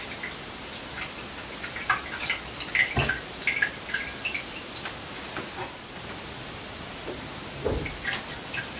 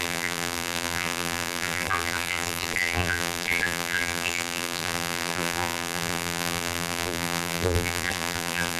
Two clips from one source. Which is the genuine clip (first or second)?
first